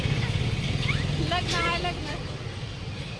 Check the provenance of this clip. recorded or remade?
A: recorded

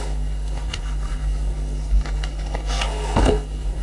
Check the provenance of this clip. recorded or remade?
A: remade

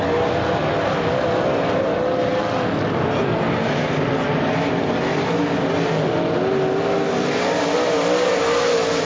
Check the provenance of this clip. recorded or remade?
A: recorded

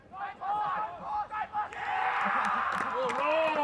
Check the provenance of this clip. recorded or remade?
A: recorded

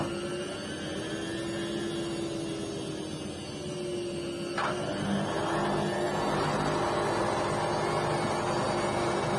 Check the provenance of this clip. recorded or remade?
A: recorded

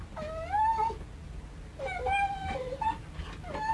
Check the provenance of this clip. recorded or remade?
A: recorded